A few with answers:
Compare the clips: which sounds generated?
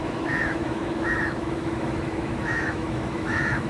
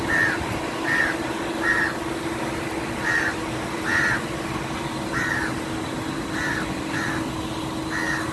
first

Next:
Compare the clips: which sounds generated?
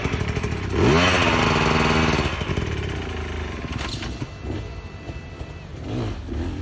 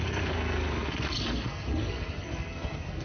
second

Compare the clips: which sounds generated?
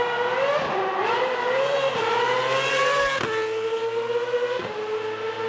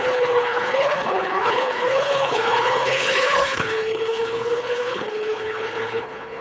second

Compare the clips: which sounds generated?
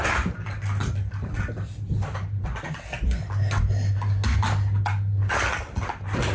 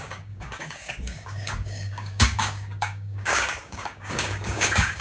second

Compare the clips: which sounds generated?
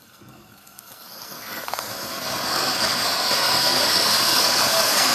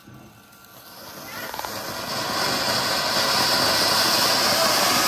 first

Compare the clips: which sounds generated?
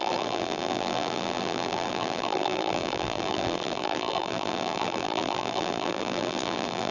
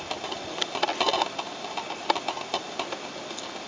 first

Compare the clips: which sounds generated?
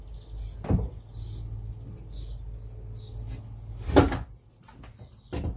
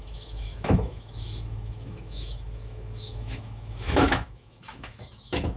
second